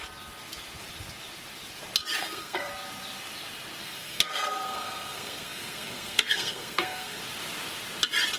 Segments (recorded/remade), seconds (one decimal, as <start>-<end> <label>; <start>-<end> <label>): 0.0-2.2 recorded; 2.2-2.7 remade; 2.7-3.8 recorded; 3.8-7.2 remade; 7.2-8.4 recorded